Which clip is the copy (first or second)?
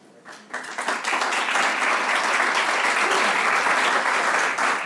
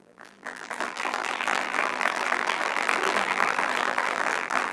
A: second